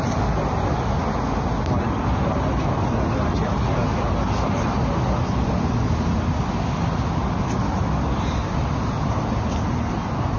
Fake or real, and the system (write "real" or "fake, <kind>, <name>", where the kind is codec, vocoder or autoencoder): real